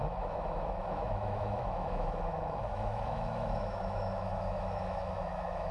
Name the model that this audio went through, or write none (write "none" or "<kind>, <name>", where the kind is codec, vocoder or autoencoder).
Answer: autoencoder, DAC-VAE